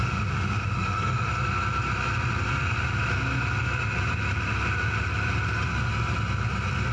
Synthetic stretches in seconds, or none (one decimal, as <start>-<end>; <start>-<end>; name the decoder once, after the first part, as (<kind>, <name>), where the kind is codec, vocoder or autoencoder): 0.0-1.3 (autoencoder, DAC-VAE)